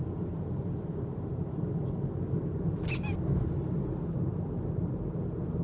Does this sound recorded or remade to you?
recorded